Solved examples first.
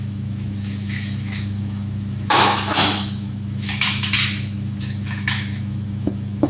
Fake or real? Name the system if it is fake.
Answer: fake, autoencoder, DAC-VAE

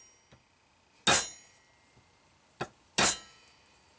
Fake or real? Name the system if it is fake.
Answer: real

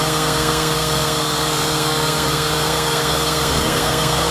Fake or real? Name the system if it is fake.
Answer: fake, codec, SNAC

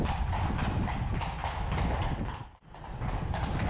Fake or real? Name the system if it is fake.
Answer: real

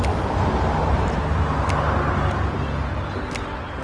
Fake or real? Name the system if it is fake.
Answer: real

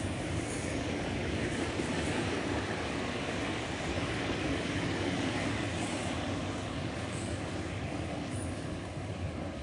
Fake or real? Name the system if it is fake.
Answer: fake, codec, DAC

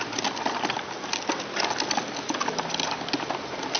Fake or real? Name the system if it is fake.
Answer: real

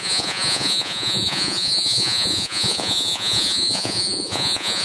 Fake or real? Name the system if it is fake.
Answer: fake, vocoder, Vocos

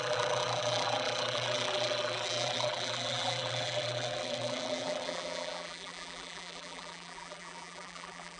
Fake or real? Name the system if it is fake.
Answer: fake, vocoder, BigVGAN v2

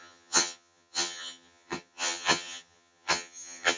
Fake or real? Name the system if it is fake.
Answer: fake, vocoder, HiFi-GAN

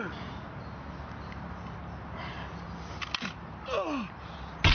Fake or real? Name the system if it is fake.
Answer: real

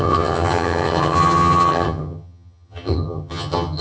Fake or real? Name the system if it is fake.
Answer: fake, vocoder, HiFi-GAN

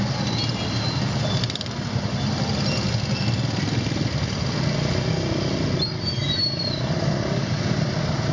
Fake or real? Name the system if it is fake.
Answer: real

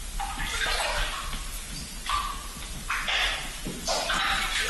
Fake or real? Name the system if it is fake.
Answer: fake, vocoder, BigVGAN v2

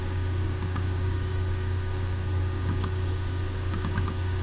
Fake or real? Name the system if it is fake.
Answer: fake, codec, DAC